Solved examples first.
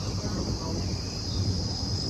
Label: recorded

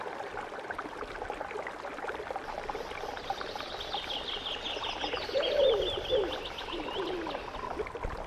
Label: recorded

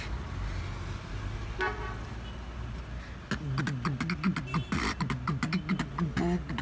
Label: recorded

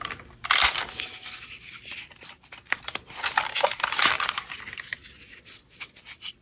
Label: remade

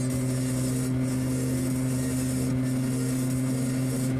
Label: recorded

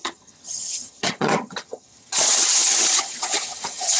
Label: remade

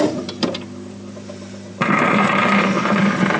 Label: remade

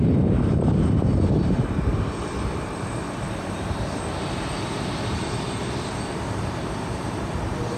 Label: remade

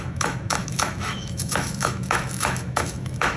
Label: remade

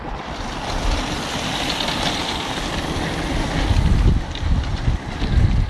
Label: recorded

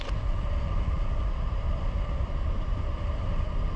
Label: recorded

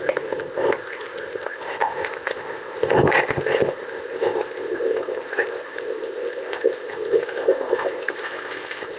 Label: remade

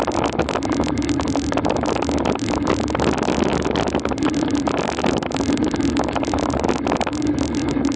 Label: recorded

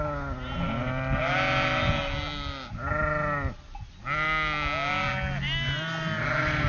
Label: recorded